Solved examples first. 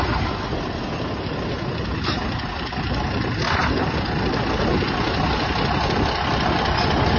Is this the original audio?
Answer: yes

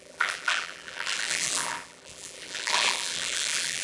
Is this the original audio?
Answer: no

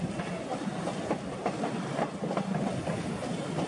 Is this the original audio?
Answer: yes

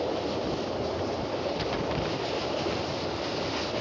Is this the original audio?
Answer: yes